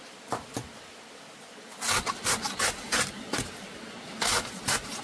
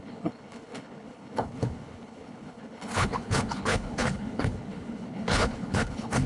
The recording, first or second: first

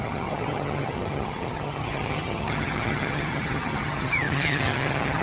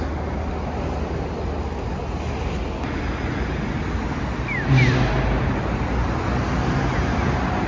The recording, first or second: second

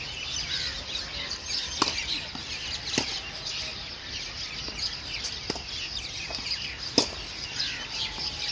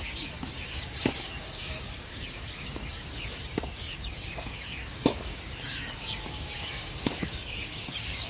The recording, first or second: first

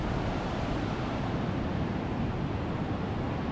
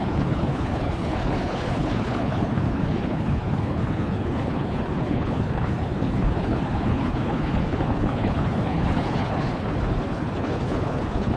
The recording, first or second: first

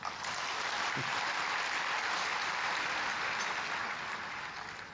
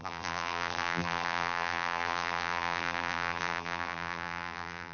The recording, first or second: first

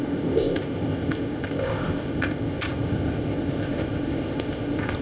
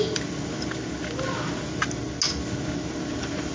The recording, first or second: second